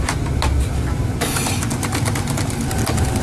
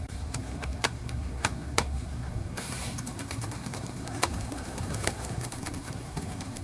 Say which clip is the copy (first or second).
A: second